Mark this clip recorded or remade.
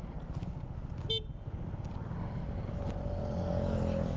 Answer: recorded